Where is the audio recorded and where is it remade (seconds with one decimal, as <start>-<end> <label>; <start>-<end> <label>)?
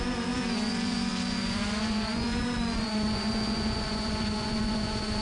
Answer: 0.0-5.2 remade